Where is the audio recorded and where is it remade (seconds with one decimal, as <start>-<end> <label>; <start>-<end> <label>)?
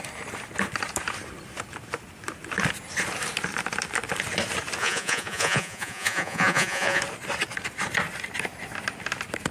0.0-4.8 recorded; 4.8-7.0 remade; 7.0-9.5 recorded